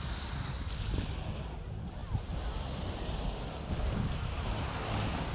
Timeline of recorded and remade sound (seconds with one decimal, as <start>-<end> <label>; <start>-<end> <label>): 0.0-5.3 recorded